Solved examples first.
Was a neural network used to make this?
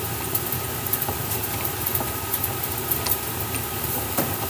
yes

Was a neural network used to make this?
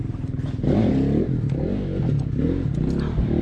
no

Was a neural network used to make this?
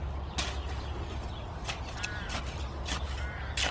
no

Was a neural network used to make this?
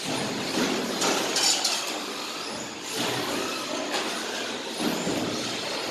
no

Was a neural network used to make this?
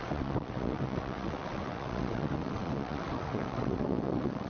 yes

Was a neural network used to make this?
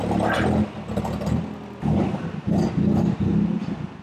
no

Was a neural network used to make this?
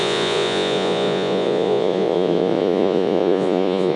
yes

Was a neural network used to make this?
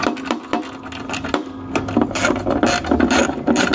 no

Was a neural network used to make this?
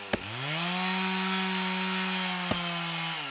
no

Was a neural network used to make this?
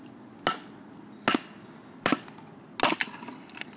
no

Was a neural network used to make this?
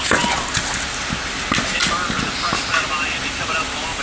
no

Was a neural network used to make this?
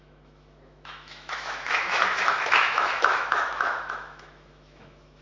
yes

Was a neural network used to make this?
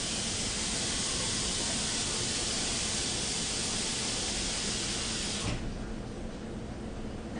no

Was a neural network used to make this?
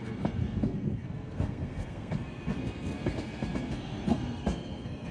yes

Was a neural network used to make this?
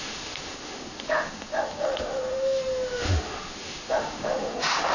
yes